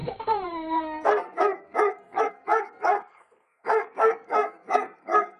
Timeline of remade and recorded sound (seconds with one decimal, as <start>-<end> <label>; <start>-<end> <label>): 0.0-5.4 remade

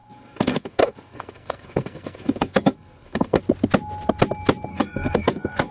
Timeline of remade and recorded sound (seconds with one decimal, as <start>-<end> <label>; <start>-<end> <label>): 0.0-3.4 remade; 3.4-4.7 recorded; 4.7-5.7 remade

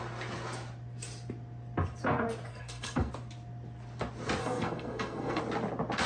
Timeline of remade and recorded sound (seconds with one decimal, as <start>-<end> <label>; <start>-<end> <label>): 0.0-2.5 recorded; 2.5-3.1 remade; 3.1-4.4 recorded; 4.4-5.4 remade; 5.4-6.1 recorded

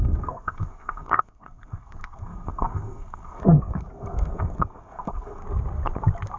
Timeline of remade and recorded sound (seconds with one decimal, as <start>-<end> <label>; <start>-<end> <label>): 0.0-5.4 remade; 5.4-6.4 recorded